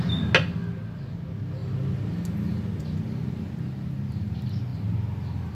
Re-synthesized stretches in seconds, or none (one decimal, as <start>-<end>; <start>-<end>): none